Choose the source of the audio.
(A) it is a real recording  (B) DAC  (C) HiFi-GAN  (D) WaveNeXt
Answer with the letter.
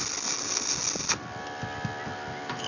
A